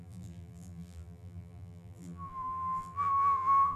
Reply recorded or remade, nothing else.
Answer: remade